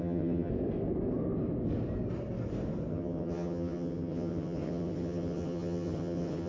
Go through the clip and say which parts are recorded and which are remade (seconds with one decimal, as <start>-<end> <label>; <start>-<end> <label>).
0.0-0.5 remade; 0.5-2.9 recorded; 2.9-6.5 remade